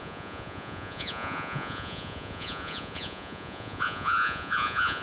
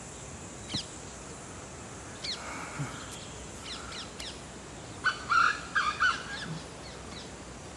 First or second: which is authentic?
second